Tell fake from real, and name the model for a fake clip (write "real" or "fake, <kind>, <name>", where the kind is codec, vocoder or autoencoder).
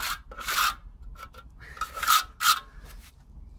real